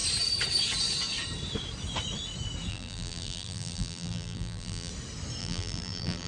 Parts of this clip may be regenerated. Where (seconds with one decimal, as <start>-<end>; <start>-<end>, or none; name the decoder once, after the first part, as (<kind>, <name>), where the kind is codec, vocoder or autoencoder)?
2.7-4.9 (vocoder, BigVGAN v2); 5.4-6.3